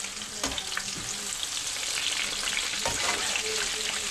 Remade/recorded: recorded